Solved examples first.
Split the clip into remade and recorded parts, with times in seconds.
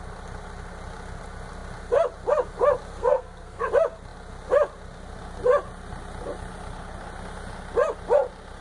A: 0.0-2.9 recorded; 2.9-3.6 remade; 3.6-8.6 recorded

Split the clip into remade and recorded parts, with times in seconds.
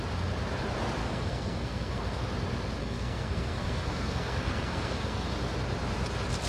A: 0.0-1.0 recorded; 1.0-2.2 remade; 2.2-2.8 recorded; 2.8-5.3 remade; 5.3-6.5 recorded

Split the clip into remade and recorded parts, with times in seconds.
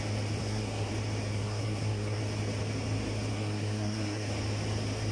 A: 0.0-0.4 recorded; 0.4-0.9 remade; 0.9-1.3 recorded; 1.3-2.2 remade; 2.2-3.3 recorded; 3.3-4.3 remade; 4.3-5.1 recorded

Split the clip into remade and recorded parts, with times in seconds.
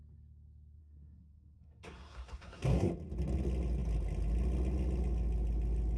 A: 0.0-0.8 recorded; 0.8-2.9 remade; 2.9-6.0 recorded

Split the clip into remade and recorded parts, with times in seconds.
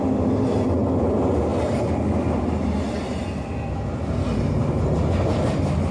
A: 0.0-5.9 recorded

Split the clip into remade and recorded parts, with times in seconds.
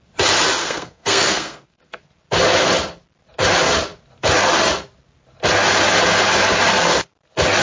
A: 0.0-0.6 recorded; 0.6-2.0 remade; 2.0-7.6 recorded